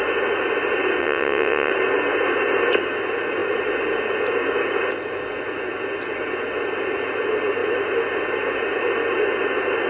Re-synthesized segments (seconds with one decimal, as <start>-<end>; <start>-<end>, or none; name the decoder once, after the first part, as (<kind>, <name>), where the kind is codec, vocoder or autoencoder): 1.0-1.7 (vocoder, WaveNeXt)